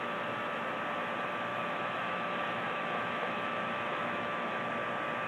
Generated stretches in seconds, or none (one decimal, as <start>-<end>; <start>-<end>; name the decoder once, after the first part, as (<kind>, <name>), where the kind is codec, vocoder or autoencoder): 1.5-4.7 (autoencoder, DAC-VAE)